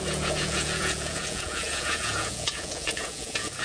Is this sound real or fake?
fake